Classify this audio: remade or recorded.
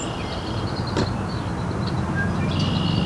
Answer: recorded